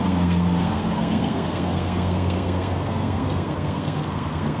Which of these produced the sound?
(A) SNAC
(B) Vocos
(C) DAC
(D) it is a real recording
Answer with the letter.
A